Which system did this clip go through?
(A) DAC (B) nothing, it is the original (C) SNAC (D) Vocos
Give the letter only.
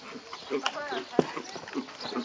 B